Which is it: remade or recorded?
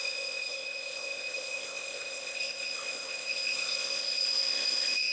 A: remade